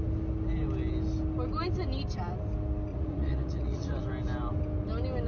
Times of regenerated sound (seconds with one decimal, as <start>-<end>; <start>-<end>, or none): 2.9-4.0